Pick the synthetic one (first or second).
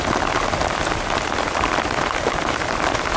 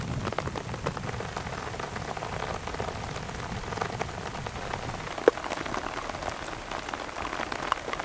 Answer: first